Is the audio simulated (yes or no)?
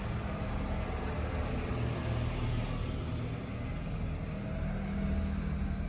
no